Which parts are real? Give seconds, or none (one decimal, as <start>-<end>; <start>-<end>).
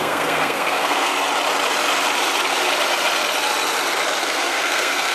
1.1-4.2